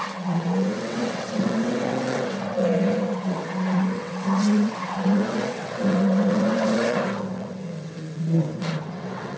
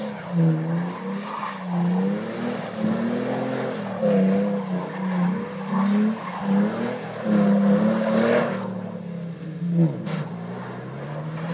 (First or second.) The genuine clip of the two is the second